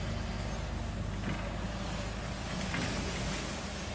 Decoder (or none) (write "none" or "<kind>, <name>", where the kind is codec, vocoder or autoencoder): none